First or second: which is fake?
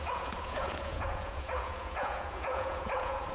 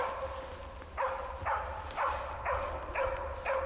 first